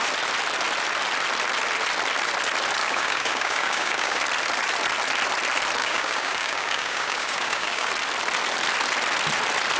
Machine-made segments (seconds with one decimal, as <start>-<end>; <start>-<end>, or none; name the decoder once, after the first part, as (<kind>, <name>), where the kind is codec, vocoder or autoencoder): 2.8-4.2 (codec, DAC); 5.8-7.9

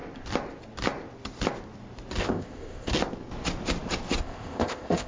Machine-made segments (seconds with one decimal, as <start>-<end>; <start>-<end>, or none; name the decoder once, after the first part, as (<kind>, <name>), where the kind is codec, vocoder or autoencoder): 2.2-2.9 (codec, ZipCodec); 4.2-5.1

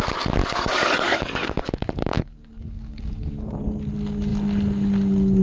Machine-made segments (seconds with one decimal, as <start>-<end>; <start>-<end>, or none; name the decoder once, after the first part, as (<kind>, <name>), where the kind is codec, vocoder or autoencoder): 0.4-3.6 (codec, DAC)

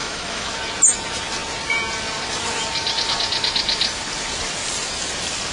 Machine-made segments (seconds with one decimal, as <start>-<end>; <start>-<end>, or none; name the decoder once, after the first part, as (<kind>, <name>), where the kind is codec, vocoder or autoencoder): 0.0-0.5 (autoencoder, DAC-VAE)

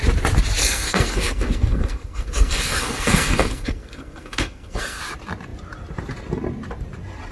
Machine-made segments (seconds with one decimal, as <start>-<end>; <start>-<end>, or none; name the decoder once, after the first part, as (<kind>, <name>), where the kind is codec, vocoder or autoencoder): 0.6-5.0 (codec, SNAC)

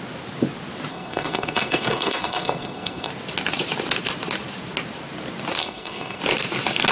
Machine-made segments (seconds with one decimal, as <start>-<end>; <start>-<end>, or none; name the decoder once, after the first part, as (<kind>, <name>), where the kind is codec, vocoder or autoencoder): 0.9-3.1 (codec, SNAC); 5.6-6.2

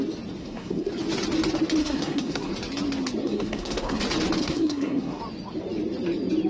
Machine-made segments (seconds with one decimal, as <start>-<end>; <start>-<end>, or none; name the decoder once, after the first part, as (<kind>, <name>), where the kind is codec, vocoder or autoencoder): 0.4-0.9 (codec, SNAC); 1.8-2.5; 3.2-4.0; 4.4-5.2